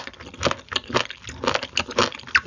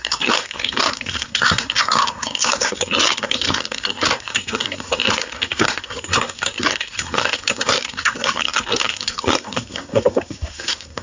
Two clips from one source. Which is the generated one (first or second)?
second